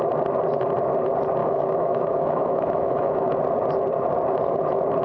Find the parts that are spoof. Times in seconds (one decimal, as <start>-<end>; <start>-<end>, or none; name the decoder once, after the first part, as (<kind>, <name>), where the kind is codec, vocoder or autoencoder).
1.4-3.3 (autoencoder, DAC-VAE)